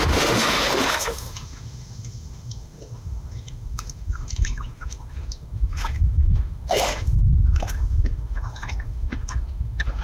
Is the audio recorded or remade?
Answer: remade